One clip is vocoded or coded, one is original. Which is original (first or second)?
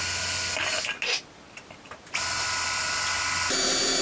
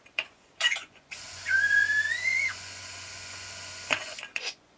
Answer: first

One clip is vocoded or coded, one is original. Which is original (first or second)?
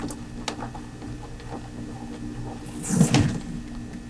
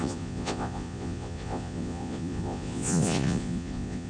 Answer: first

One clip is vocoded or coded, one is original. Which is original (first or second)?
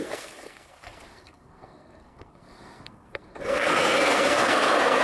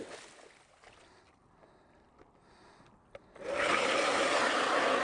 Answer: second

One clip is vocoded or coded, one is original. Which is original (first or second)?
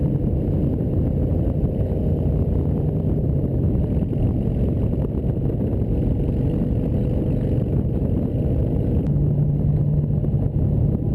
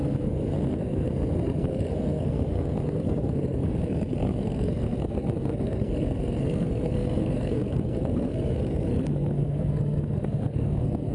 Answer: first